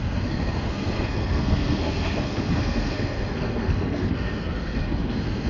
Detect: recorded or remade remade